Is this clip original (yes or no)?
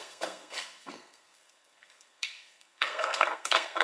no